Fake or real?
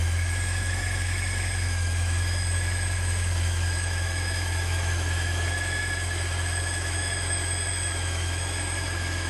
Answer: fake